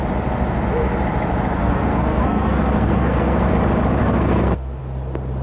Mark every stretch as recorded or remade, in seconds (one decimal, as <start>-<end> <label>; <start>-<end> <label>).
0.0-1.6 recorded; 1.6-3.5 remade; 3.5-4.0 recorded; 4.0-4.8 remade; 4.8-5.4 recorded